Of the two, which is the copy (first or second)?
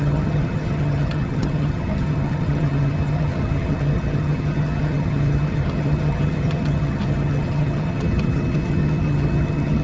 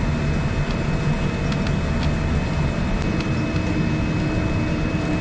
first